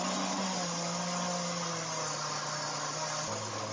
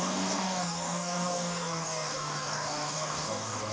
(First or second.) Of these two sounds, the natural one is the first